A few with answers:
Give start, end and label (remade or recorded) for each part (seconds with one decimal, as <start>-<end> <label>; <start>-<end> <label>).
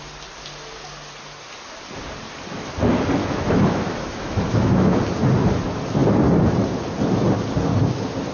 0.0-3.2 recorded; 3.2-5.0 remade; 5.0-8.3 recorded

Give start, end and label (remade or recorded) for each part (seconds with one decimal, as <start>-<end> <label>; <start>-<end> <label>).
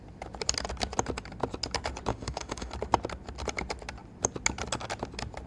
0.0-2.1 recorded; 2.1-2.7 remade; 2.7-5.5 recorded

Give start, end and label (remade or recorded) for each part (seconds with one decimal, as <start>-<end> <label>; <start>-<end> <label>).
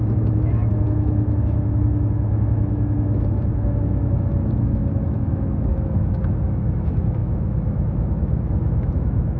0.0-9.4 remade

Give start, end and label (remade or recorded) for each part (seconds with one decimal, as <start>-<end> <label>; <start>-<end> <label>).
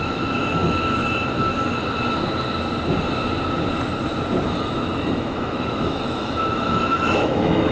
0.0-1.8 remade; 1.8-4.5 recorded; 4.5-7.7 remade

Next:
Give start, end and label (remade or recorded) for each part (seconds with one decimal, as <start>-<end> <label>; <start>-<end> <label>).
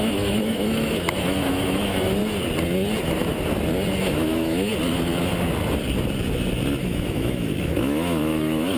0.0-2.2 remade; 2.2-4.0 recorded; 4.0-4.7 remade; 4.7-6.8 recorded; 6.8-8.8 remade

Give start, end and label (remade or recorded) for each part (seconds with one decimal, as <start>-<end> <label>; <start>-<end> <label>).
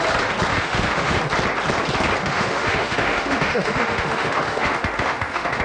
0.0-0.5 recorded; 0.5-1.2 remade; 1.2-2.2 recorded; 2.2-5.6 remade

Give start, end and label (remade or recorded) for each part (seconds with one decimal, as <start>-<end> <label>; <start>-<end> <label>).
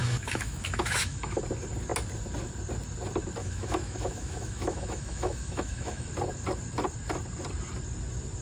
0.0-1.4 remade; 1.4-3.4 recorded; 3.4-6.1 remade; 6.1-8.4 recorded